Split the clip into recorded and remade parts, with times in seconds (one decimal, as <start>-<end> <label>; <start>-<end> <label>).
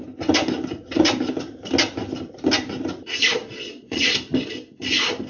0.0-3.4 recorded; 3.4-4.1 remade; 4.1-5.3 recorded